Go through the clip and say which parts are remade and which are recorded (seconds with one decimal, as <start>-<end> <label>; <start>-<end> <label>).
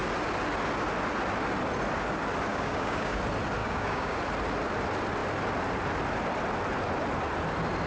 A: 0.0-2.5 recorded; 2.5-3.2 remade; 3.2-3.6 recorded; 3.6-4.2 remade; 4.2-7.9 recorded